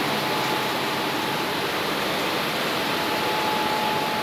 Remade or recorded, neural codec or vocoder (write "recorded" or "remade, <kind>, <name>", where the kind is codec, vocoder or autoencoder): recorded